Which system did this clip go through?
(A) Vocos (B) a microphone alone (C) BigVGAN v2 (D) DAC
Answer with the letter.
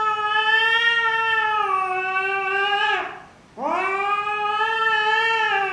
B